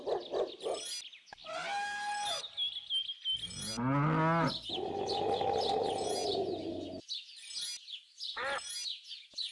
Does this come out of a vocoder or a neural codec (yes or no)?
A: no